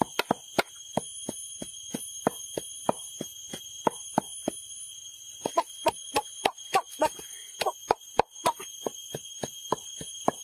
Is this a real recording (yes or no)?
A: yes